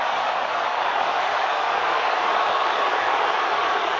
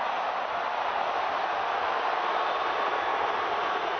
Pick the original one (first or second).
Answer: second